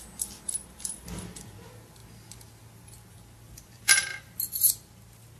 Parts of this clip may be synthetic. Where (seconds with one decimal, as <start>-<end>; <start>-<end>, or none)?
0.0-2.0; 3.4-4.1